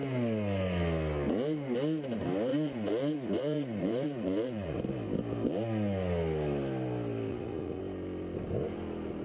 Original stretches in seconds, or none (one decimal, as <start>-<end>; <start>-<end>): 0.0-2.5; 4.8-7.3; 7.8-9.2